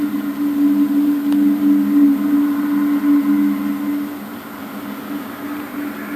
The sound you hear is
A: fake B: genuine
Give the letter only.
B